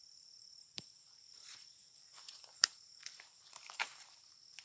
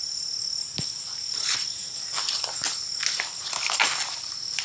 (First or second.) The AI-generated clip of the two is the first